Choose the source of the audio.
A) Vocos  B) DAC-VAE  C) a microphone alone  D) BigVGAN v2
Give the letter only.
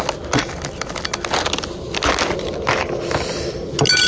C